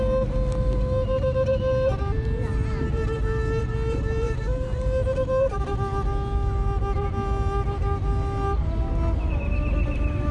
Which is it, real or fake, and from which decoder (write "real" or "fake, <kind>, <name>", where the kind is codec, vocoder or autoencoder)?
real